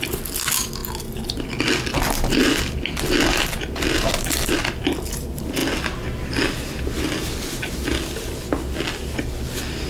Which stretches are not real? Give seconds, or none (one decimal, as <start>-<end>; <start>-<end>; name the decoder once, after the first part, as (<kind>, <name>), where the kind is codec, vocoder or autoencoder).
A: none